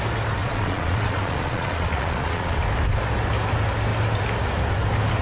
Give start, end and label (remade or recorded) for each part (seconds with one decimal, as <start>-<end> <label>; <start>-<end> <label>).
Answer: 0.0-0.4 recorded; 0.4-2.6 remade; 2.6-5.2 recorded